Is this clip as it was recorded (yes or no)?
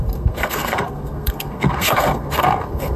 no